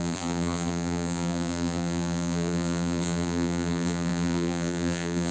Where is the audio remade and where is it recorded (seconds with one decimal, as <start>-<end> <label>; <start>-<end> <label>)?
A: 0.0-5.3 remade